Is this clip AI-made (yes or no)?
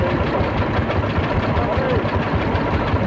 no